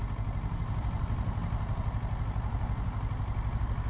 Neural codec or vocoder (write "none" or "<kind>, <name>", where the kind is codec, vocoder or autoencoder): none